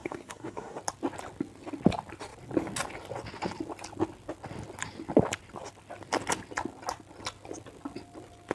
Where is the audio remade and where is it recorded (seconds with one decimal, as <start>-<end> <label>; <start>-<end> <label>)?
0.0-0.8 remade; 0.8-8.5 recorded